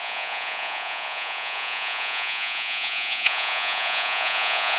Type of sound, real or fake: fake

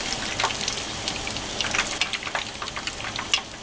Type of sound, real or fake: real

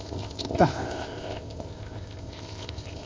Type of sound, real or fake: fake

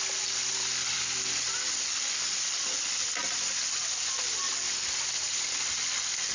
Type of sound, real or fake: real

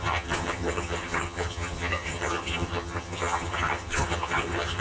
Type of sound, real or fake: fake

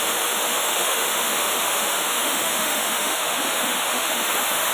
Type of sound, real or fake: fake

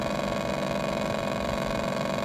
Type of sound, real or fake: fake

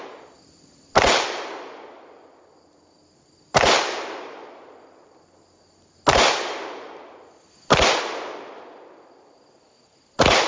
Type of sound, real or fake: real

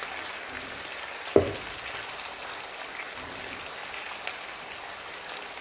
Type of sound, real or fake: real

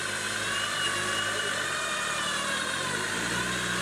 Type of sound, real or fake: real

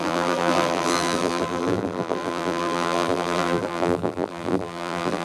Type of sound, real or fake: fake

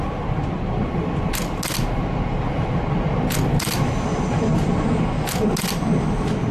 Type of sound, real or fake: real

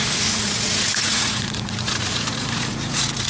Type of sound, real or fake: fake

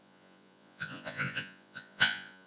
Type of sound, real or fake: fake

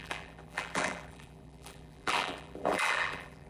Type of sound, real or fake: fake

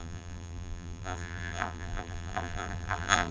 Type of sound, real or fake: fake